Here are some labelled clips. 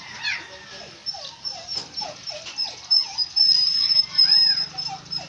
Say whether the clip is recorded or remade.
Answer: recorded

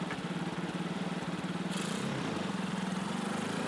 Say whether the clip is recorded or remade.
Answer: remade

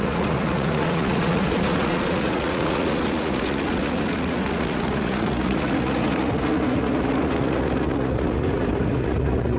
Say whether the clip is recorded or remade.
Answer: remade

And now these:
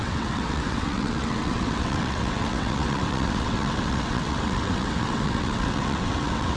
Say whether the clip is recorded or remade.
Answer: remade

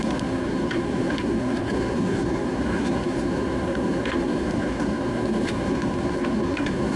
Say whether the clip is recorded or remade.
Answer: remade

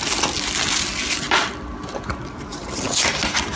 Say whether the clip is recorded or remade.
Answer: recorded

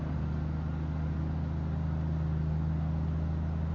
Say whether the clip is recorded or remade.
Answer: recorded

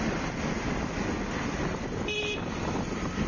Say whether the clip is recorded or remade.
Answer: recorded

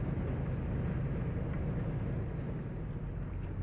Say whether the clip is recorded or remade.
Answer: recorded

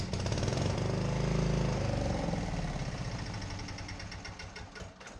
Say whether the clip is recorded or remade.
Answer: recorded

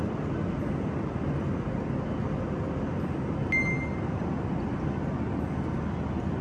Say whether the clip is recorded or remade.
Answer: recorded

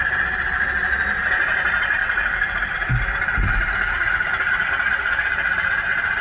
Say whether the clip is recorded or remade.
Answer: remade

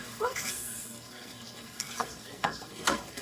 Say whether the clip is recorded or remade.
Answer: remade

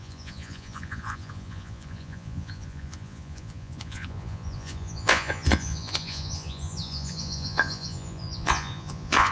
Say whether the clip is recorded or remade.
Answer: remade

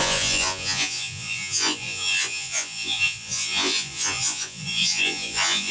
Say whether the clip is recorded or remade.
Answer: remade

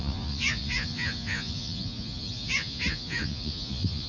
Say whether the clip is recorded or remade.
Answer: remade